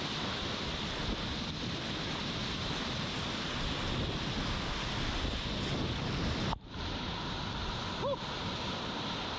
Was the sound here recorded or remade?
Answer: recorded